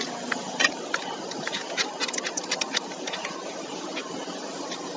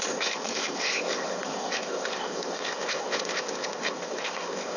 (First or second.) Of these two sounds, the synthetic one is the second